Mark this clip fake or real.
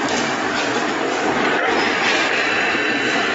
real